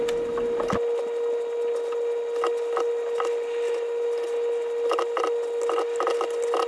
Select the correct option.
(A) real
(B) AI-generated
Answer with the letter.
A